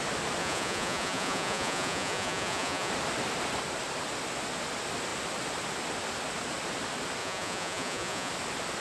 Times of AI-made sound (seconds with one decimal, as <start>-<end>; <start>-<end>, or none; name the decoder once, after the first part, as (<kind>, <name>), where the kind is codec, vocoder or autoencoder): 0.4-2.9 (vocoder, Vocos); 7.2-8.3